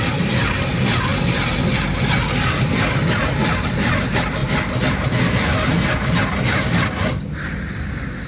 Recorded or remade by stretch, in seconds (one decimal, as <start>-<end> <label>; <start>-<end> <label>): 0.0-8.3 recorded

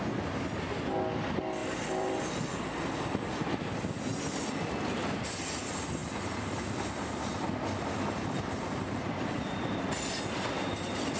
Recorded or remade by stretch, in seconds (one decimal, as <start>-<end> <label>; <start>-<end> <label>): 0.0-1.6 recorded; 1.6-2.6 remade; 2.6-6.0 recorded; 6.0-9.9 remade; 9.9-11.2 recorded

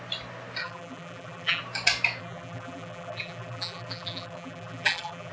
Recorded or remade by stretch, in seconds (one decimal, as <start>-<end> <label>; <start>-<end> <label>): 0.0-0.6 recorded; 0.6-1.6 remade; 1.6-2.2 recorded; 2.2-5.3 remade

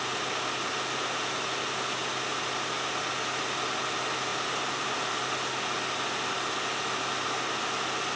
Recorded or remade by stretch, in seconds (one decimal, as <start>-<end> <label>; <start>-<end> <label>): 0.0-4.3 recorded; 4.3-5.3 remade; 5.3-8.2 recorded

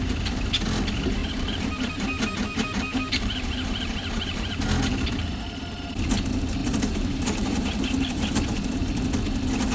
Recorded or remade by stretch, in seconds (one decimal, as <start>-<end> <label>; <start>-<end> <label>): 0.0-1.2 recorded; 1.2-4.6 remade; 4.6-6.6 recorded; 6.6-8.9 remade; 8.9-9.7 recorded

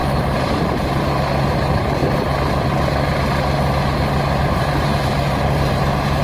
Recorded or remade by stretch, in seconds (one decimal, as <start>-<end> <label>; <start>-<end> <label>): 0.0-2.0 remade; 2.0-4.4 recorded; 4.4-6.2 remade

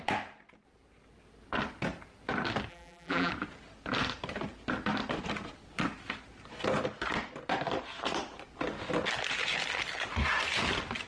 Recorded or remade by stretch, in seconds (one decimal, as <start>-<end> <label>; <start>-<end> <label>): 0.0-2.7 recorded; 2.7-3.3 remade; 3.3-11.1 recorded

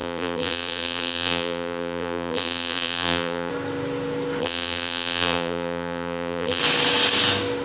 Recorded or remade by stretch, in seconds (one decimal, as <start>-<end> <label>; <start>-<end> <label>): 0.0-3.5 remade; 3.5-4.4 recorded; 4.4-6.6 remade; 6.6-7.6 recorded